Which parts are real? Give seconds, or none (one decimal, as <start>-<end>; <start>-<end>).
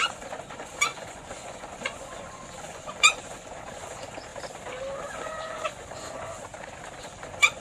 4.3-5.1; 6.4-7.0